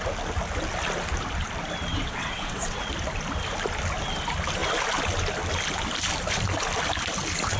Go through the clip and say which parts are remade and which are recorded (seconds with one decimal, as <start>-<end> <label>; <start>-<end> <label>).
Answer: 0.0-1.9 recorded; 1.9-2.9 remade; 2.9-7.6 recorded